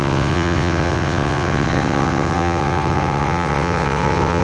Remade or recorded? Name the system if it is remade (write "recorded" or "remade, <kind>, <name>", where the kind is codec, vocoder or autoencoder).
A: remade, vocoder, WaveNeXt